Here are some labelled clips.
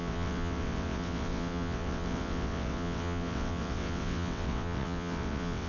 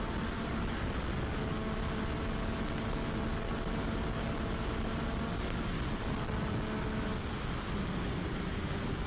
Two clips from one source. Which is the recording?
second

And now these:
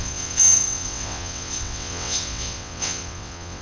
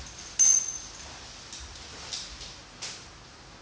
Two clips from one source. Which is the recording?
second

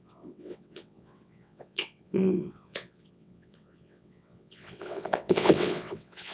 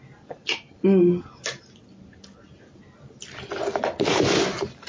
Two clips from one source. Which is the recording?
second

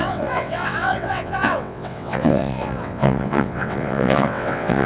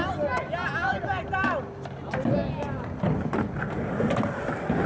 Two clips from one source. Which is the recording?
second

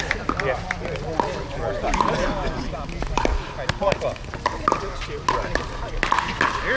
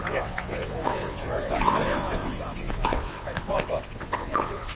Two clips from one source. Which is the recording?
first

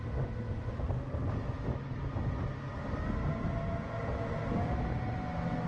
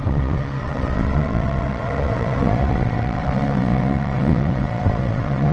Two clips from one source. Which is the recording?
first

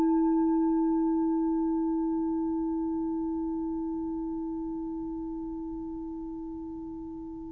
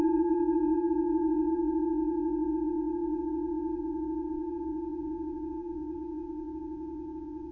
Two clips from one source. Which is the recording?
first